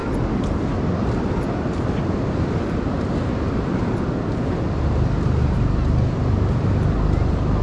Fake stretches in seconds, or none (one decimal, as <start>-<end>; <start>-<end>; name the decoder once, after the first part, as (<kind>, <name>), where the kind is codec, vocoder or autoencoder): none